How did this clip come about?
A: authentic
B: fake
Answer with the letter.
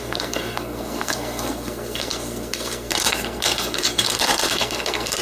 B